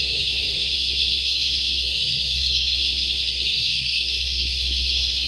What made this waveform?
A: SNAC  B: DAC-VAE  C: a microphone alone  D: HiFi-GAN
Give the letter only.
A